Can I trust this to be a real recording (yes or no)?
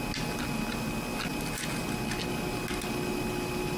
yes